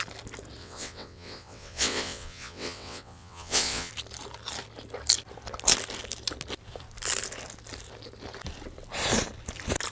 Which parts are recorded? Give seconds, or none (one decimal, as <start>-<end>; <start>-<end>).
0.0-0.6; 3.9-9.9